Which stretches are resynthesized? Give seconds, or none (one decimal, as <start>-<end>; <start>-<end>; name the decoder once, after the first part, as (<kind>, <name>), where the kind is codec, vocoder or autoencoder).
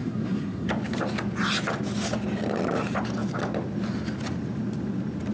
0.0-0.7 (codec, SNAC)